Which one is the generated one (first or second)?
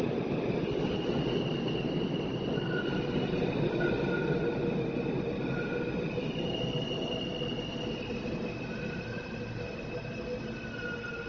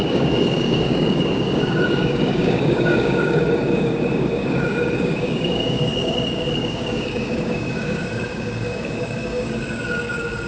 second